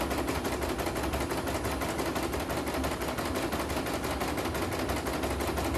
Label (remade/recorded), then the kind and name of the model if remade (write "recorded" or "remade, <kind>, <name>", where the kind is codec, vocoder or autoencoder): recorded